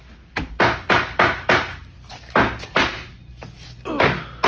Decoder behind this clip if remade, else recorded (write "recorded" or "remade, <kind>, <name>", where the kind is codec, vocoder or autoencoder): recorded